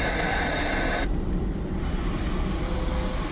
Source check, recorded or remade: recorded